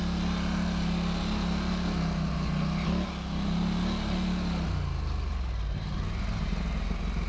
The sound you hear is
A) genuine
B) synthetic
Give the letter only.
A